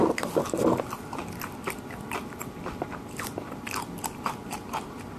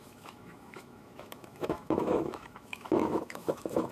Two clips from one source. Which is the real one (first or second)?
first